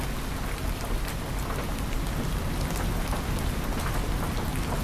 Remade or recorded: recorded